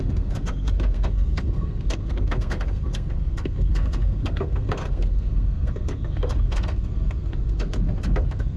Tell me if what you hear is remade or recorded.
remade